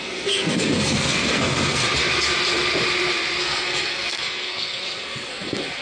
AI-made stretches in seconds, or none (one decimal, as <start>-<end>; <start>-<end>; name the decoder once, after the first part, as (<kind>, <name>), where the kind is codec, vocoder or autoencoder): 0.0-1.8 (codec, SNAC); 3.4-5.8